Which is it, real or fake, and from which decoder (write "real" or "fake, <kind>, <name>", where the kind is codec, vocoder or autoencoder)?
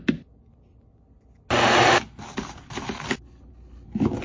real